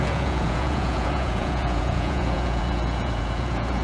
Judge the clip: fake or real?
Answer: fake